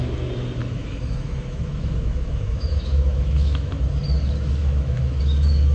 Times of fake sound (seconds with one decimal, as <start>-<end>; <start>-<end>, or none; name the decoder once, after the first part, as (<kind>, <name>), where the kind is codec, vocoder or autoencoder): 0.6-4.0 (autoencoder, DAC-VAE); 4.6-5.2